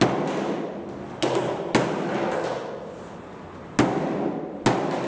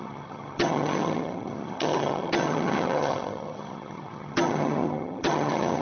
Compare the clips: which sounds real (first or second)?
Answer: first